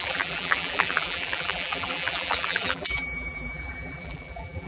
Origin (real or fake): fake